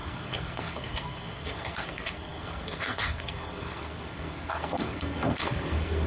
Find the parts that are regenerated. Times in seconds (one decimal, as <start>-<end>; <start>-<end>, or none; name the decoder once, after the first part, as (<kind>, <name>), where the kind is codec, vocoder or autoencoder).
0.0-6.1 (codec, SNAC)